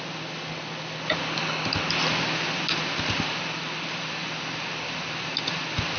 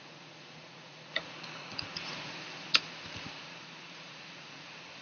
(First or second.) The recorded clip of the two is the first